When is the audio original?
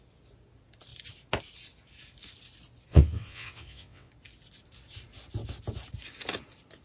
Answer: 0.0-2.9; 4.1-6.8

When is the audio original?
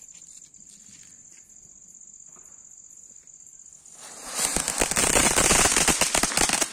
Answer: 0.0-6.7